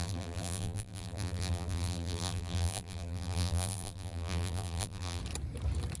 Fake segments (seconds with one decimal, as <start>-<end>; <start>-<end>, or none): 0.0-5.2